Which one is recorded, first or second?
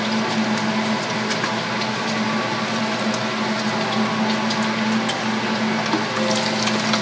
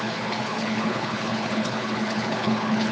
first